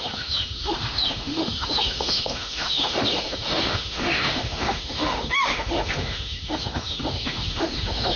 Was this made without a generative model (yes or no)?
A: no